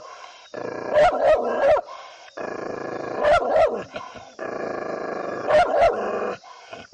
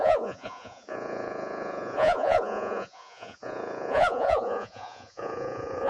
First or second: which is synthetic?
second